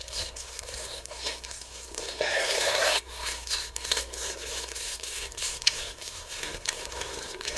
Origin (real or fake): fake